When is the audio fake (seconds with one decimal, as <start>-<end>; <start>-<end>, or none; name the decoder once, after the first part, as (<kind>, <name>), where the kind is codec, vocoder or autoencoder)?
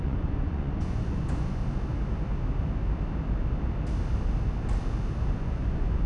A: 0.0-1.6 (vocoder, Vocos); 5.3-6.1